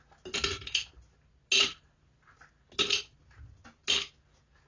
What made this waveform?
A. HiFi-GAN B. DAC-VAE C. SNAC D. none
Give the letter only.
D